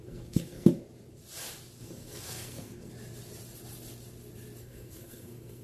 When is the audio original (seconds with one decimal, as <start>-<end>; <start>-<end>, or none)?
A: 0.7-1.8; 2.9-4.6